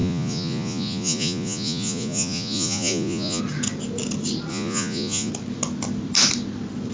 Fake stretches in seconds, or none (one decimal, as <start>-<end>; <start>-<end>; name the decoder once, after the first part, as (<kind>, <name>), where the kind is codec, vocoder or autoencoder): 0.0-3.4 (vocoder, Vocos); 4.5-5.3

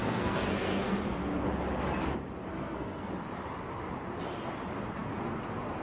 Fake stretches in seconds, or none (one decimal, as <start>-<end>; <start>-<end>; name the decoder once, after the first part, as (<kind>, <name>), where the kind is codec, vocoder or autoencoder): 0.0-1.0 (codec, SNAC); 2.5-3.1

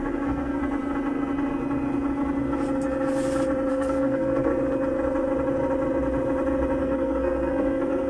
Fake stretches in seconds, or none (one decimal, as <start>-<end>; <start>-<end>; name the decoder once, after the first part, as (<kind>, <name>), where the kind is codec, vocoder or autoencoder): 0.0-0.6 (codec, SNAC); 3.7-4.5; 6.8-8.1

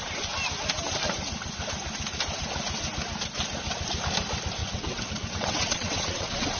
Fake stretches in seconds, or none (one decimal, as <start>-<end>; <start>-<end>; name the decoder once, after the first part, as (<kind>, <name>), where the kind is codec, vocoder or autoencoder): 4.6-6.6 (vocoder, WaveNeXt)

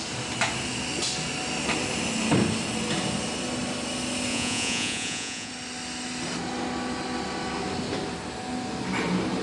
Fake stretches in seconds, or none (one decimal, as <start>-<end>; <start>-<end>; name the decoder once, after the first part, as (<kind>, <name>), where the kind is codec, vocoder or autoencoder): 4.3-5.5 (vocoder, Vocos)

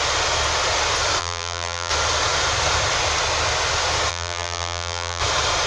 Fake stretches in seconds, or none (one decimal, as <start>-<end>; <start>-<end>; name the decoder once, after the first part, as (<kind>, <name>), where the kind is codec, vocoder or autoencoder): 1.2-1.9 (vocoder, BigVGAN v2); 4.1-5.2

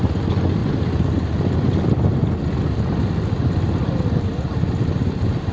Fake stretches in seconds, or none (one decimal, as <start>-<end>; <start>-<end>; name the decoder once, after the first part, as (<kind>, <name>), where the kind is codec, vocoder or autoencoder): none